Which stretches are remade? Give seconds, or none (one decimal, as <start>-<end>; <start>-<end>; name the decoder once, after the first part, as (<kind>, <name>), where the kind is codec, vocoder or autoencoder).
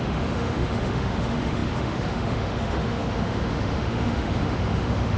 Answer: 0.0-5.2 (autoencoder, DAC-VAE)